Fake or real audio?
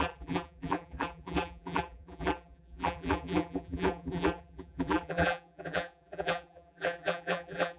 fake